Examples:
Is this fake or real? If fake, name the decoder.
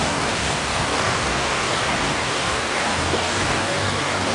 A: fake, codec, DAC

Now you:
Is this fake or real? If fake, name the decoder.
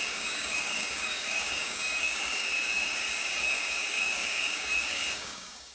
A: fake, codec, DAC